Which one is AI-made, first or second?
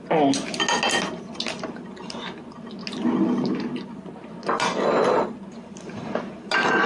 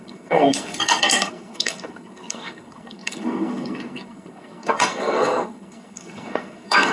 second